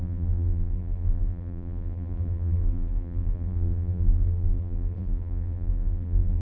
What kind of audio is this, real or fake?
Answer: fake